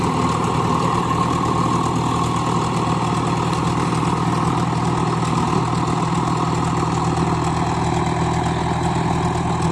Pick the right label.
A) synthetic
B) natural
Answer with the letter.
B